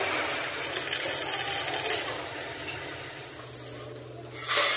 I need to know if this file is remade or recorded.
recorded